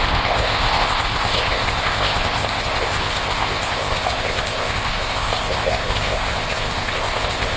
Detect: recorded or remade remade